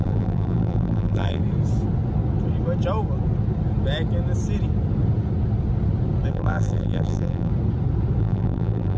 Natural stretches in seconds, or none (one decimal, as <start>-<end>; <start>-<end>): 1.4-6.3; 7.5-8.2